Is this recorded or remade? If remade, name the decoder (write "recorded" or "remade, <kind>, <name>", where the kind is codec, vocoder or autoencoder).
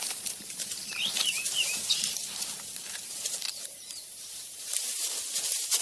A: remade, vocoder, BigVGAN v2